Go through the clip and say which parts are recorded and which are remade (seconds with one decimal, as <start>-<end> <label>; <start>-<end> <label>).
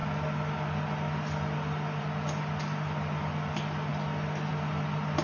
0.0-5.2 recorded